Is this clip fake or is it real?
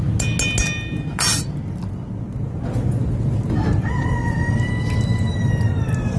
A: real